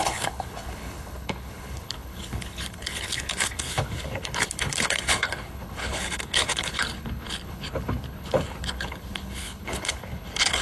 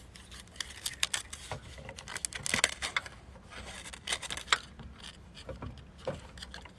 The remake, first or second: first